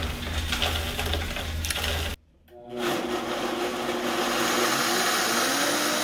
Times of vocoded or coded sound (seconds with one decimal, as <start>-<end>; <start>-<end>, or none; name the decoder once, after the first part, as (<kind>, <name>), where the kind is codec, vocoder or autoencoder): none